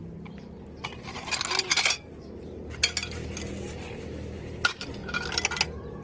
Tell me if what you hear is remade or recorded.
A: recorded